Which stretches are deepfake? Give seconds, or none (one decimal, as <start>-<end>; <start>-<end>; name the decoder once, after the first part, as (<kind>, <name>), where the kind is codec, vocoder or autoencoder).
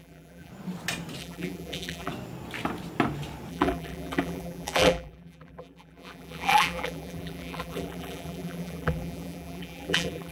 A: 0.0-0.5 (vocoder, BigVGAN v2); 1.2-2.1; 3.5-10.3